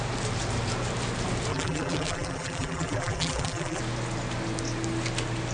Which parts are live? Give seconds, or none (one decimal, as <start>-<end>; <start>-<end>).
0.0-1.5; 3.8-5.5